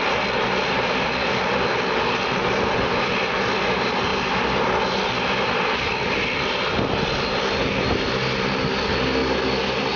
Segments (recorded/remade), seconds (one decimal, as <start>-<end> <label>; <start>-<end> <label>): 0.0-10.0 recorded